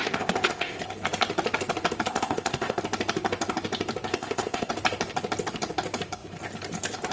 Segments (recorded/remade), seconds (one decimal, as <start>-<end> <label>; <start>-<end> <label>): 0.0-0.8 remade; 0.8-2.1 recorded; 2.1-2.8 remade; 2.8-4.1 recorded; 4.1-4.7 remade; 4.7-7.1 recorded